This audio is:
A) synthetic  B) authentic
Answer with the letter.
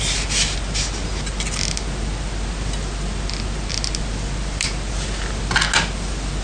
B